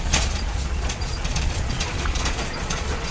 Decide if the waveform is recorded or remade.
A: remade